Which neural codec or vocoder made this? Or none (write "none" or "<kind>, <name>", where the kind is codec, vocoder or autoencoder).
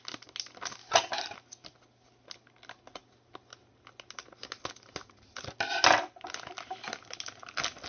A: none